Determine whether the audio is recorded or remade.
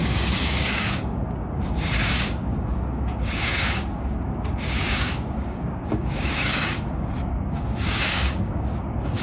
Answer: remade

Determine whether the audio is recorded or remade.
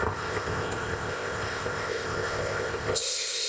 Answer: remade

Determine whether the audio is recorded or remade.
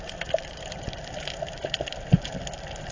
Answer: recorded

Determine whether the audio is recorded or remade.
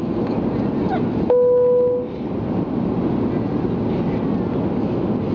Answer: recorded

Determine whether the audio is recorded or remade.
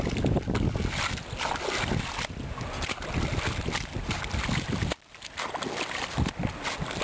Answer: recorded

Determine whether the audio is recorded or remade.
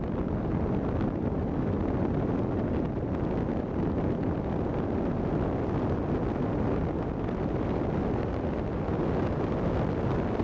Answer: recorded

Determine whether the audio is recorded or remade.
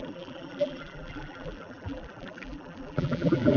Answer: remade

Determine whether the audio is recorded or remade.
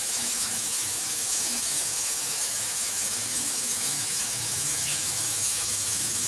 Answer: remade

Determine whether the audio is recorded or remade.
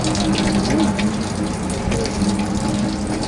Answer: recorded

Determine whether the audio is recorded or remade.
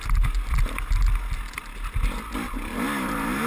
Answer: recorded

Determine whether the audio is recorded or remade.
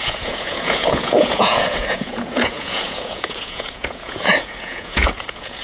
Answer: remade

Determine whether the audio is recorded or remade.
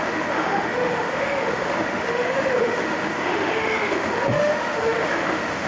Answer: remade